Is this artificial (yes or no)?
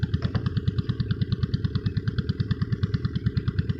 no